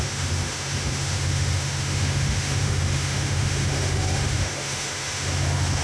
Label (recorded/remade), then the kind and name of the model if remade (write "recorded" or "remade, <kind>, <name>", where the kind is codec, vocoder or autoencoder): remade, autoencoder, DAC-VAE